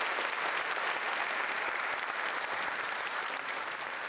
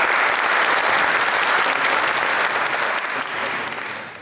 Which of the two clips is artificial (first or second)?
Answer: first